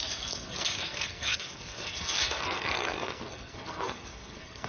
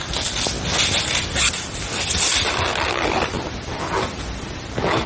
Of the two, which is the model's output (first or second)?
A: first